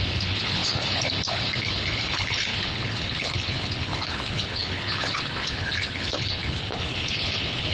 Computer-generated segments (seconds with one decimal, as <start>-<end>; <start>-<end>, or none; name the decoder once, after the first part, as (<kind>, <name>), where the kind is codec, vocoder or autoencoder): 0.0-7.7 (codec, HILCodec)